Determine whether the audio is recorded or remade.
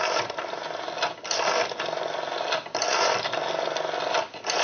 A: recorded